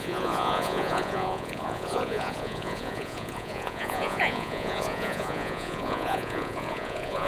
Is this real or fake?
fake